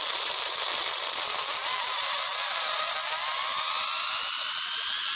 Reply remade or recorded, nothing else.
remade